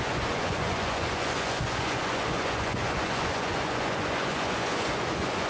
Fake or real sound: fake